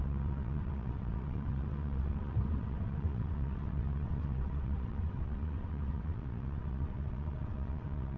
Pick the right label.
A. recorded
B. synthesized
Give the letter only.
B